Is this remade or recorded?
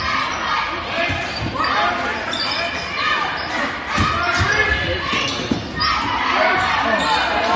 recorded